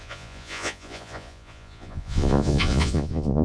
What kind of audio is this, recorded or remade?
remade